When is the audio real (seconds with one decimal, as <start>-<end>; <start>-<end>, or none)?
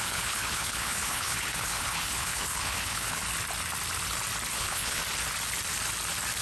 3.2-4.5; 5.0-6.4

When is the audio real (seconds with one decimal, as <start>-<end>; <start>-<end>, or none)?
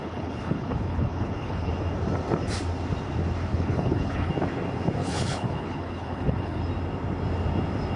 1.7-3.5; 4.3-5.0; 6.6-8.0